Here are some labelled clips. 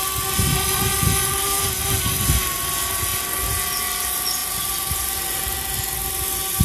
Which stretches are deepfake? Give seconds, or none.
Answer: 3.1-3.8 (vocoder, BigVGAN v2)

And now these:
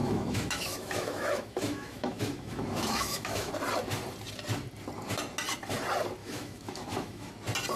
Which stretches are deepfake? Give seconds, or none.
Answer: 0.0-3.5 (autoencoder, DAC-VAE); 6.2-7.3

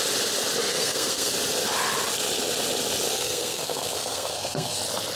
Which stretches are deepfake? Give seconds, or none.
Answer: 0.7-1.3 (codec, SNAC); 3.1-4.8

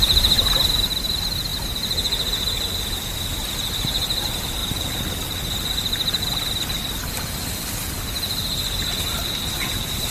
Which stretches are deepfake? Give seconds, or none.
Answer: 4.6-10.1 (vocoder, BigVGAN v2)

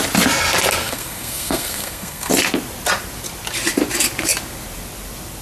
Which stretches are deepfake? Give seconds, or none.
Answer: 0.8-2.3 (codec, SNAC)

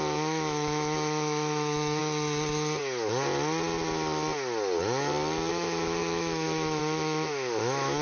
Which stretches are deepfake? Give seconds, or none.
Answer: 0.0-2.0 (autoencoder, DAC-VAE); 5.5-8.0

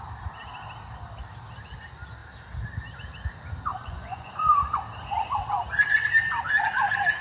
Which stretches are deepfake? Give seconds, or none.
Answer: 3.7-4.8 (vocoder, Vocos)

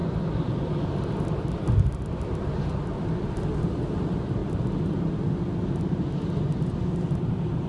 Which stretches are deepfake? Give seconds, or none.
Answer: none